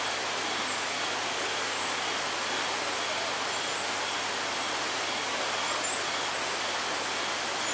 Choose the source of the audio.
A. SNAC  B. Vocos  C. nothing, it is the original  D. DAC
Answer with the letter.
C